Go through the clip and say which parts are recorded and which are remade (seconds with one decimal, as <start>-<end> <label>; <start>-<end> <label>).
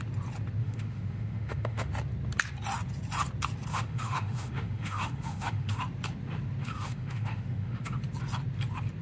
0.0-0.6 recorded; 0.6-1.9 remade; 1.9-3.7 recorded; 3.7-5.8 remade; 5.8-6.6 recorded; 6.6-8.0 remade; 8.0-9.0 recorded